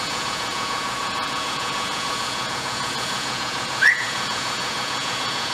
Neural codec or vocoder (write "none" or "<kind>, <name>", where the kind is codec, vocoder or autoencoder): vocoder, Vocos